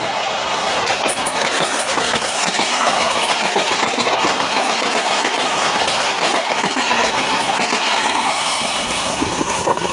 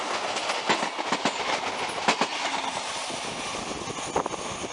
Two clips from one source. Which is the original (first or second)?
second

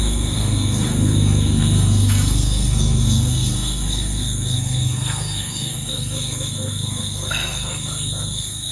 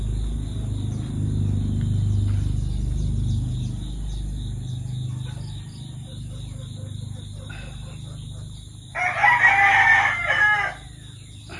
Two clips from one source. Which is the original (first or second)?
second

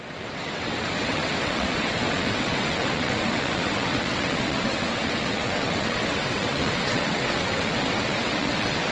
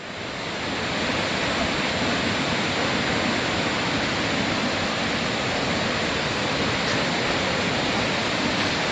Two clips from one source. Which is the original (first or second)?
second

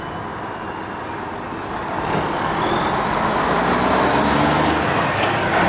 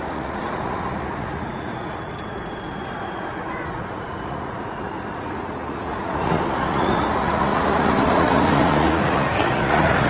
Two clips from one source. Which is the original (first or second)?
first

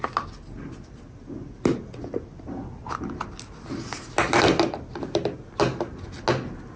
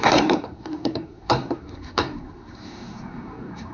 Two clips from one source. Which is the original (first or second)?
first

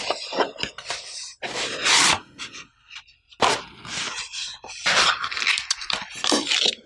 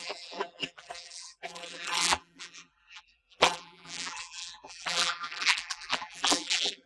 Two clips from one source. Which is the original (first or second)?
first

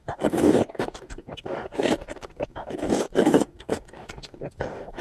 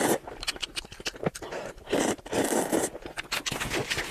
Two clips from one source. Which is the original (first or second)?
second